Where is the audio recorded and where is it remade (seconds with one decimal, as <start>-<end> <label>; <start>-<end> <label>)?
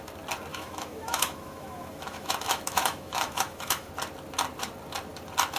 0.0-0.5 recorded; 0.5-3.9 remade; 3.9-5.6 recorded